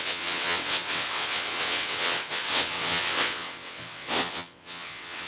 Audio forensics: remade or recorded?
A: remade